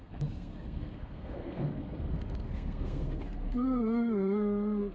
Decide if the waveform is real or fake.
fake